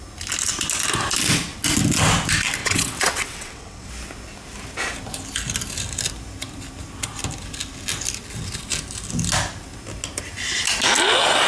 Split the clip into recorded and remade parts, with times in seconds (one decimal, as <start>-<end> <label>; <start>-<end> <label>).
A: 0.0-2.6 recorded; 2.6-3.9 remade; 3.9-11.5 recorded